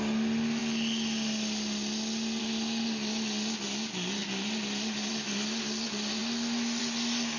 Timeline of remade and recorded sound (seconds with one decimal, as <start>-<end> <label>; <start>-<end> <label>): 0.0-7.4 recorded